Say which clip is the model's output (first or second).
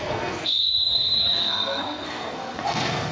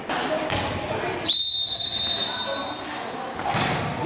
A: first